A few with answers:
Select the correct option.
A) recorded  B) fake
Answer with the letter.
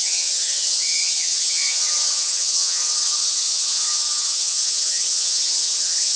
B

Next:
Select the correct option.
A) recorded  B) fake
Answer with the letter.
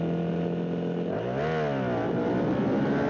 A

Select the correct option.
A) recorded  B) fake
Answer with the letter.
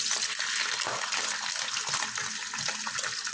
A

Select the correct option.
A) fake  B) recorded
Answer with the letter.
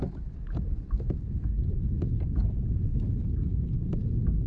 B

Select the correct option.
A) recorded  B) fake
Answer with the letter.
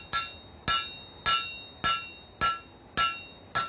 A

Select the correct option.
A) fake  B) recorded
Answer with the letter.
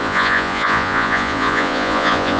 A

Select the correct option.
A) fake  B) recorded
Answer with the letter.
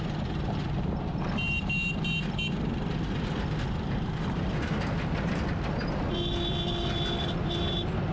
B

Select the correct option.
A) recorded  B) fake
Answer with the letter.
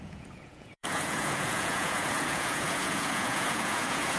B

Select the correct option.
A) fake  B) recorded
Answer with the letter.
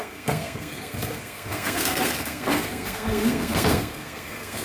A